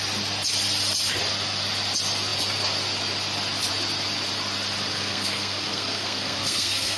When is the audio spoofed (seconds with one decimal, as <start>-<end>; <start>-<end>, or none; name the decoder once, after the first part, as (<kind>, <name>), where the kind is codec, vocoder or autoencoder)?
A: 4.9-7.0 (codec, SNAC)